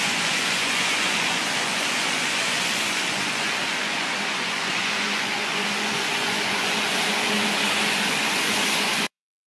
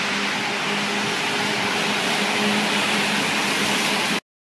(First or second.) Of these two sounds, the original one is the second